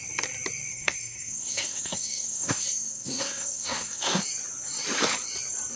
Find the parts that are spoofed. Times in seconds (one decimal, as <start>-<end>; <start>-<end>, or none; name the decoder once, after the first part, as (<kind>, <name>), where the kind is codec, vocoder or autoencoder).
0.7-4.2 (codec, SNAC)

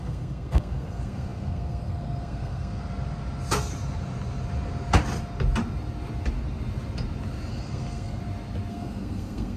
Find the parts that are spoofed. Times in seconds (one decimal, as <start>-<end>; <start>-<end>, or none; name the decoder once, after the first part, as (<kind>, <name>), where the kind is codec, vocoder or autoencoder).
0.0-2.8 (codec, SNAC); 7.5-8.2; 8.7-9.6